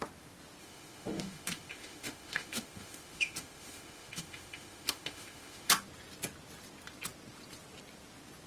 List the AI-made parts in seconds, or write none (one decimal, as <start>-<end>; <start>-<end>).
0.6-5.7